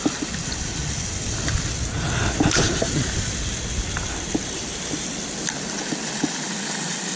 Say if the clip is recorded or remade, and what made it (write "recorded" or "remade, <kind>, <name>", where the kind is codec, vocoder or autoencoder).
recorded